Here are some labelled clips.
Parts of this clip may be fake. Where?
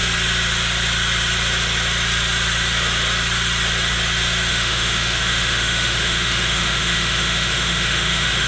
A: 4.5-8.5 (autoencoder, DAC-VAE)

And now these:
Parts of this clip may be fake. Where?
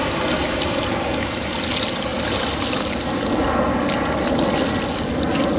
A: none